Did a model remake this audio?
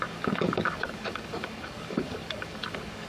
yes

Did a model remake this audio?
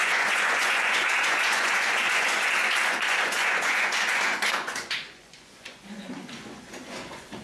yes